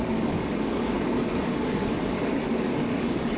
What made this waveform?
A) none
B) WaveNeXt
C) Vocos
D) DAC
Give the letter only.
D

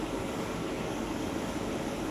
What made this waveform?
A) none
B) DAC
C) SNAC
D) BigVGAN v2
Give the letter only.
B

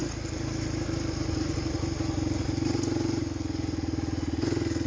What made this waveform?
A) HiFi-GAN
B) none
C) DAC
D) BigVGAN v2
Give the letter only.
B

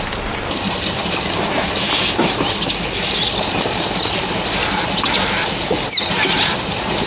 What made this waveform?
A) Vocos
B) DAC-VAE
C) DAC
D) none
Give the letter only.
D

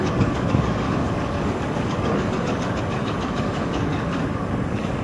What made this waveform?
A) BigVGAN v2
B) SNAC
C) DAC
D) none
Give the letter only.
C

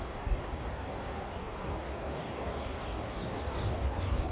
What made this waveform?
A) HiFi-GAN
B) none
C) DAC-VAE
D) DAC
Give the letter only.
D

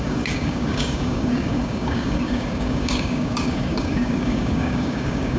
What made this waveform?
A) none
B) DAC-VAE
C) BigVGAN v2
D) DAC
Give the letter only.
D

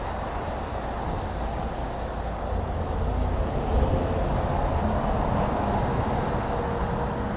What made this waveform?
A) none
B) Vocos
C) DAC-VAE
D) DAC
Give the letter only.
A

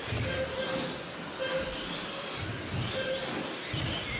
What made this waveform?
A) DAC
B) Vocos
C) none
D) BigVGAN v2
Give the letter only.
C